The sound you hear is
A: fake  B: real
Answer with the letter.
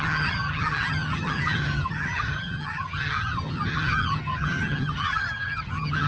A